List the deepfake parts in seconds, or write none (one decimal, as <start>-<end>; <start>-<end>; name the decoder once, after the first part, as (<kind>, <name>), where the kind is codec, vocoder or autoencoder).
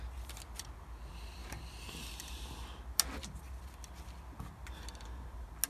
none